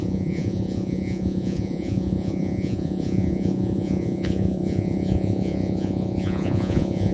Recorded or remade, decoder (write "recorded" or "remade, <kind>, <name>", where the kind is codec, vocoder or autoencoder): remade, vocoder, Vocos